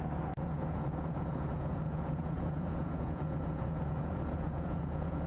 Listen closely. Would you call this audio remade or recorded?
remade